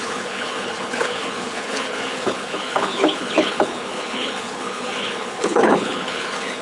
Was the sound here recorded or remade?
remade